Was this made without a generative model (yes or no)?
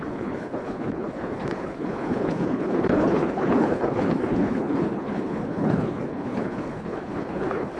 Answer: no